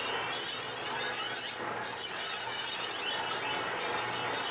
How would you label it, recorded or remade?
recorded